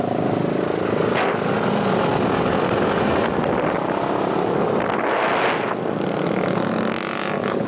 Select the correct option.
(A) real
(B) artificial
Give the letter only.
A